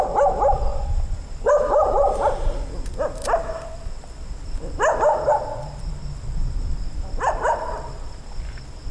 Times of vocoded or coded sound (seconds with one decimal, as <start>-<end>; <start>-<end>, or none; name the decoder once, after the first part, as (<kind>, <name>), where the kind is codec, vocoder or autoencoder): 0.7-5.8 (vocoder, BigVGAN v2); 6.9-7.5